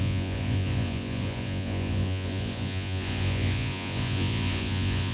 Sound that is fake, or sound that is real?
fake